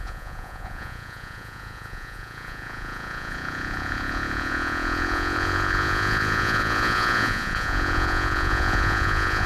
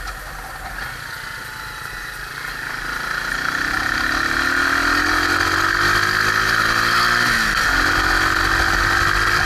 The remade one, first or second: first